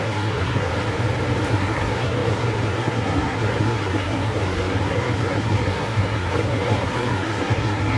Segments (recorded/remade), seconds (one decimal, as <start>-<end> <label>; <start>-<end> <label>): 0.0-0.7 remade; 0.7-1.5 recorded; 1.5-8.0 remade